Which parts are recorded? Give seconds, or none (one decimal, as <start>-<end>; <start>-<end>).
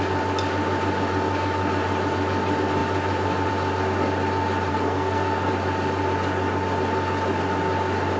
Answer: 0.0-4.7; 5.5-8.2